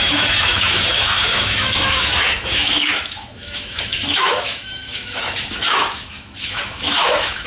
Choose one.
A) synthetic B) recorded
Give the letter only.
A